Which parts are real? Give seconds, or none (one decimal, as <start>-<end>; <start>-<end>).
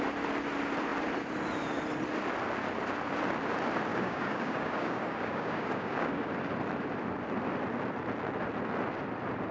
0.0-3.9; 6.3-9.5